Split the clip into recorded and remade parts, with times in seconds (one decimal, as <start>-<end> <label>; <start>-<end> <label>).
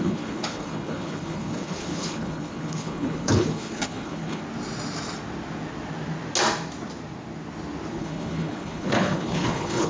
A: 0.0-4.4 remade; 4.4-7.9 recorded; 7.9-9.9 remade